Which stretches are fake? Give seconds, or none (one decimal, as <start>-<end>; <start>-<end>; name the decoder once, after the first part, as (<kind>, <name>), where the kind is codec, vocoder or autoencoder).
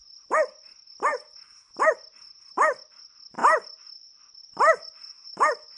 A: none